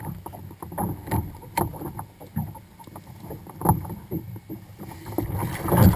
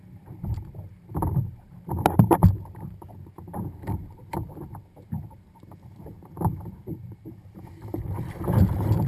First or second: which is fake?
second